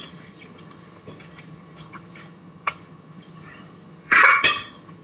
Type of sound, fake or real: fake